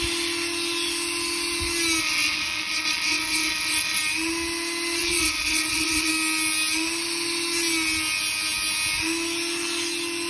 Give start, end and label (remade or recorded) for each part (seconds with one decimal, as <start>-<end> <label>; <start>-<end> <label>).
0.0-2.0 recorded; 2.0-4.0 remade; 4.0-5.0 recorded; 5.0-6.1 remade; 6.1-10.3 recorded

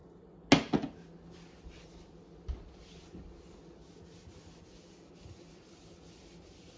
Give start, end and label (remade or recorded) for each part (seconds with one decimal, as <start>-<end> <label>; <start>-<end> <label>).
0.0-6.8 recorded

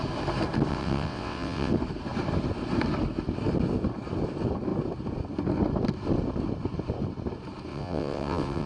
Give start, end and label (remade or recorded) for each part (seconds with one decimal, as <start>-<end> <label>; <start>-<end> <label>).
0.0-0.7 recorded; 0.7-1.7 remade; 1.7-7.7 recorded; 7.7-8.7 remade

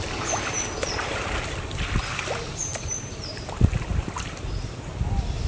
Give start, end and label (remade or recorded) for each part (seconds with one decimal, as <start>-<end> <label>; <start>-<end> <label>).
0.0-5.5 recorded

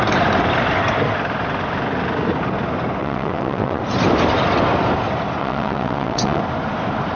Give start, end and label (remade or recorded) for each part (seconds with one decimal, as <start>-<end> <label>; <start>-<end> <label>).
0.0-3.0 recorded; 3.0-3.8 remade; 3.8-5.4 recorded; 5.4-6.4 remade; 6.4-7.2 recorded

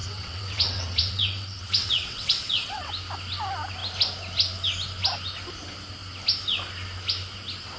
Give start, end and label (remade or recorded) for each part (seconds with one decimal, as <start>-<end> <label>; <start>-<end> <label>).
0.0-2.9 remade; 2.9-7.8 recorded